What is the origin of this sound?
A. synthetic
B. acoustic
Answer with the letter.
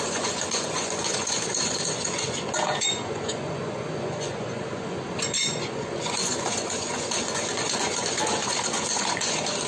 A